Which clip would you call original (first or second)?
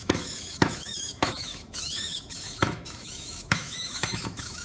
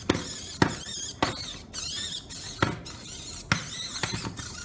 second